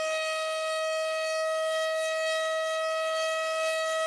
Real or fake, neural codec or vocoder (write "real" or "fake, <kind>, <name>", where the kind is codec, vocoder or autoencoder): fake, autoencoder, DAC-VAE